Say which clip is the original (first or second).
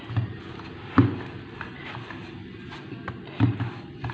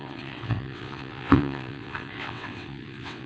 first